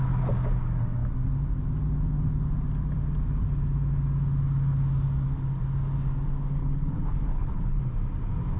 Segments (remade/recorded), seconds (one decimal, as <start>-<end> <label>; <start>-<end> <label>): 0.0-6.6 recorded; 6.6-7.8 remade; 7.8-8.6 recorded